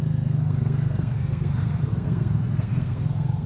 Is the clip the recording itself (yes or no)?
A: no